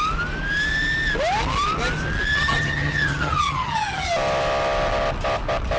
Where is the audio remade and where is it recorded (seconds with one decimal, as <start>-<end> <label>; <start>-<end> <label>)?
0.0-2.3 recorded; 2.3-4.1 remade; 4.1-5.8 recorded